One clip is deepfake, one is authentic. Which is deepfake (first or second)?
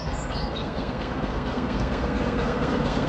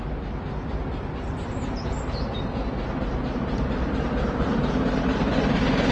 first